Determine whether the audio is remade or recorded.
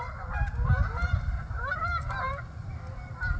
remade